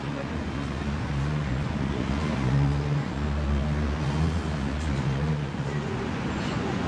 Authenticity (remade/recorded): remade